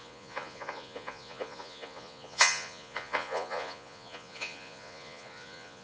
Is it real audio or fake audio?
fake